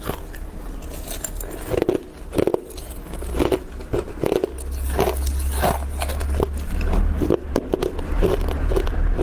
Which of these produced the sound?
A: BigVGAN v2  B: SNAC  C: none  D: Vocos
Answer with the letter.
C